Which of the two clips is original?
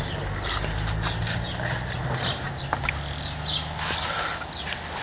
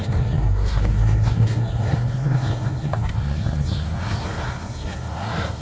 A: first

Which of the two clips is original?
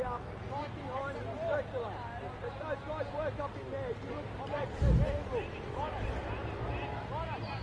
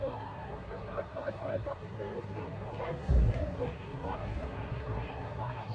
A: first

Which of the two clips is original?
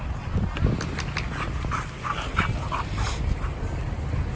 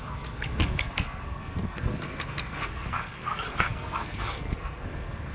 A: first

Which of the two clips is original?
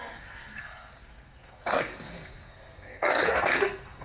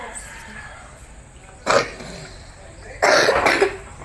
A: second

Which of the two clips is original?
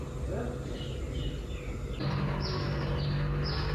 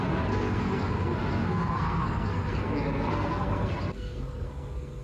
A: first